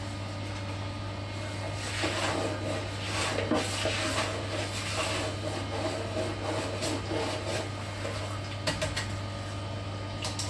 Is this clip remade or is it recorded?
recorded